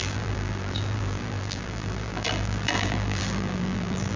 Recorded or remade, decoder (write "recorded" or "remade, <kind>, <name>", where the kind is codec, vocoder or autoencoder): remade, vocoder, BigVGAN v2